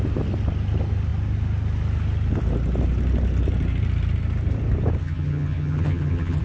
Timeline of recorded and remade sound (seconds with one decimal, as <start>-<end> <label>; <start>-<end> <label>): 0.0-5.0 recorded; 5.0-6.4 remade